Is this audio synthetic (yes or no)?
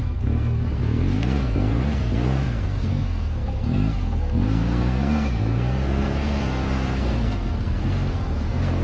yes